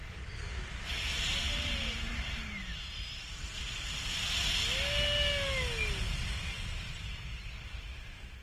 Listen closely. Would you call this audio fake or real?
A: real